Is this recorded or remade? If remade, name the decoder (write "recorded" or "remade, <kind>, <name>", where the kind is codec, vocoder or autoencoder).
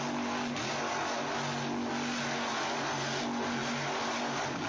recorded